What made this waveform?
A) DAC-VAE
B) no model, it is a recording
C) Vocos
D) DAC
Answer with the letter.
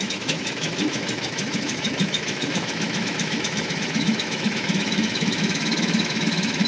A